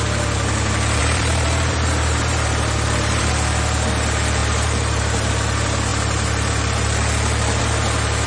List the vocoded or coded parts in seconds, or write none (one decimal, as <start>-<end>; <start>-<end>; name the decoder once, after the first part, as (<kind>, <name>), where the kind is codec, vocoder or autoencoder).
1.0-3.3 (vocoder, BigVGAN v2); 4.4-5.3